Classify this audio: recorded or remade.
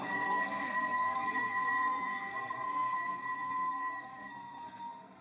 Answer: remade